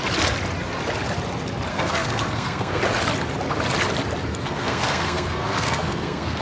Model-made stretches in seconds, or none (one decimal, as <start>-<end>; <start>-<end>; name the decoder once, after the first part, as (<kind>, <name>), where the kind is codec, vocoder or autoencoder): 1.7-2.8 (codec, SNAC); 4.3-6.4